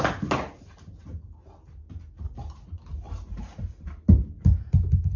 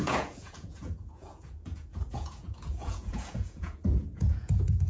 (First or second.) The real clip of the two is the first